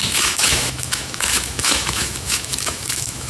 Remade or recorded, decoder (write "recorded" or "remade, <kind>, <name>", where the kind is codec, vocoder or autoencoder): remade, autoencoder, DAC-VAE